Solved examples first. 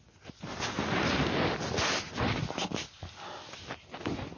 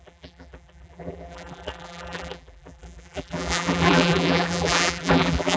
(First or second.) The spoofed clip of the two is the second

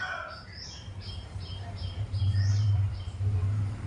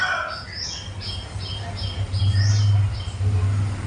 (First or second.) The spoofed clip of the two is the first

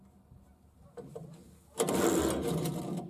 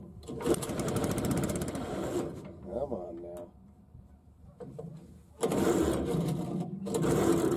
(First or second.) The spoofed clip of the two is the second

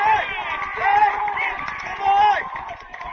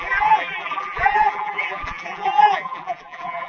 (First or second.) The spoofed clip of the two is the second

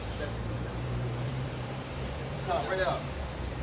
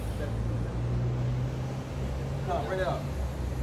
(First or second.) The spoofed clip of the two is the first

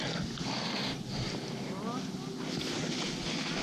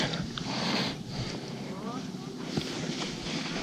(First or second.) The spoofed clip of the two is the second